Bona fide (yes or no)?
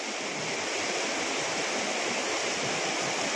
yes